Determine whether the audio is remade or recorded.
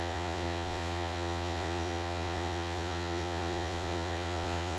remade